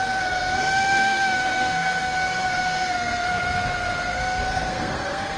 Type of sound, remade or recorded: remade